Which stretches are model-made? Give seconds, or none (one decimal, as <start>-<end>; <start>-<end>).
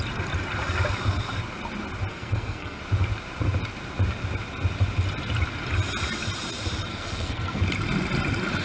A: 2.1-2.8; 6.9-7.6